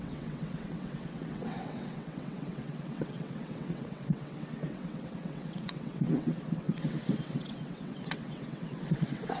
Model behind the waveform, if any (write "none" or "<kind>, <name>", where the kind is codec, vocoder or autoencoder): vocoder, WaveNeXt